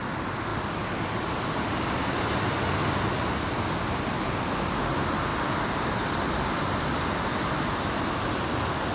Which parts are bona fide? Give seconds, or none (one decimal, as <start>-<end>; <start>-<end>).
0.0-0.5; 2.2-8.9